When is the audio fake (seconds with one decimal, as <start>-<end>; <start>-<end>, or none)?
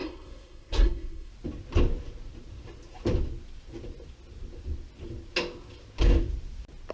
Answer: 0.0-1.3